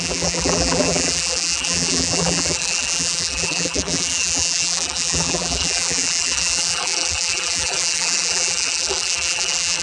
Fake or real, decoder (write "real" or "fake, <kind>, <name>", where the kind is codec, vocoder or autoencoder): fake, vocoder, BigVGAN v2